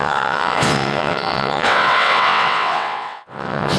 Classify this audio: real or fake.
fake